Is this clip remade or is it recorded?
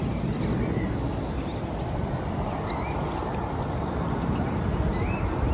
recorded